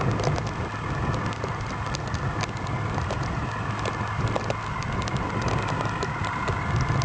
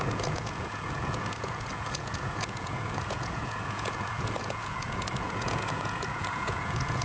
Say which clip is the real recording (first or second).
first